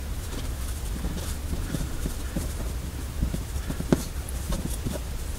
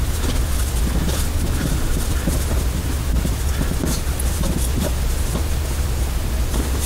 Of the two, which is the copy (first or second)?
first